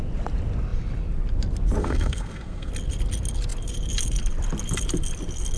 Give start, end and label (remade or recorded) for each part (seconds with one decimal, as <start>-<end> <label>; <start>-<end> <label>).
0.0-1.8 recorded; 1.8-2.7 remade; 2.7-5.6 recorded

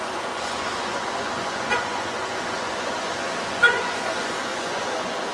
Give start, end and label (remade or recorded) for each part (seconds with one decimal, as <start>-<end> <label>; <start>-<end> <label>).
0.0-5.3 remade

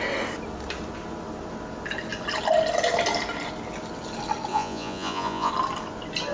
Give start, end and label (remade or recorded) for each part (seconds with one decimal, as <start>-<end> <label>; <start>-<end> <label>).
0.0-4.5 recorded; 4.5-5.5 remade; 5.5-6.3 recorded

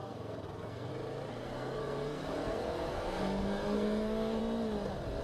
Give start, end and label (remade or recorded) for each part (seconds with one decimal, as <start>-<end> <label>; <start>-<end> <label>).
0.0-0.9 remade; 0.9-1.3 recorded; 1.3-4.4 remade; 4.4-5.2 recorded

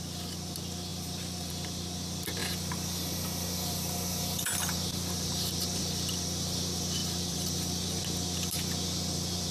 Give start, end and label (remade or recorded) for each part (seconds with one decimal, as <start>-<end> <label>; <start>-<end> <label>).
0.0-0.9 recorded; 0.9-1.5 remade; 1.5-2.4 recorded; 2.4-5.8 remade; 5.8-7.0 recorded; 7.0-8.0 remade; 8.0-9.5 recorded

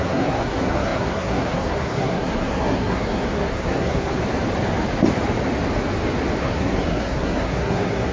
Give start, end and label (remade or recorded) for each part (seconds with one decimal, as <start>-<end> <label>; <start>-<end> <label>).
0.0-4.1 remade; 4.1-6.4 recorded; 6.4-8.1 remade

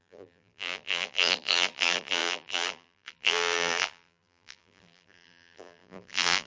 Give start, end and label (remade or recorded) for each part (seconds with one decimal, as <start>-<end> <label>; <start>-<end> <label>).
0.0-6.5 remade